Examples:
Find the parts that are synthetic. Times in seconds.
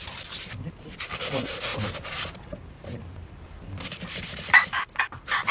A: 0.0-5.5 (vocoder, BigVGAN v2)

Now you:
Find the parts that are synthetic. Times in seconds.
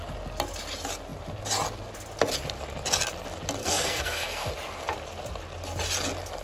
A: 3.6-4.5 (codec, SNAC)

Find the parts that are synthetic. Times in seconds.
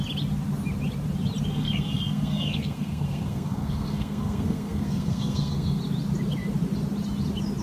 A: 1.5-5.8 (codec, SNAC)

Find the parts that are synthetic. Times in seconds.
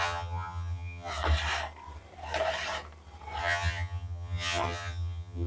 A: 0.0-1.1 (vocoder, HiFi-GAN); 3.4-5.5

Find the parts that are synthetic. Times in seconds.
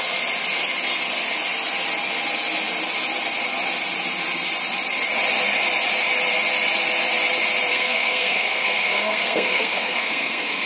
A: 7.7-10.7 (codec, SNAC)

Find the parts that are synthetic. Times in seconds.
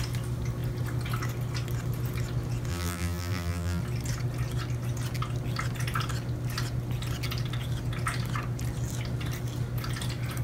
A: 2.7-3.8 (vocoder, BigVGAN v2)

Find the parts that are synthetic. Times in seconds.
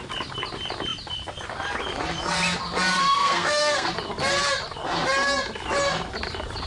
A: 3.0-3.9 (codec, SNAC)